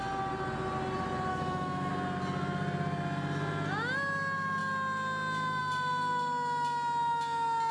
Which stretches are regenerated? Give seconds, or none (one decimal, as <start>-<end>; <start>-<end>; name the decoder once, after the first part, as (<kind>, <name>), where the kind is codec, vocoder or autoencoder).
1.3-1.9 (autoencoder, DAC-VAE)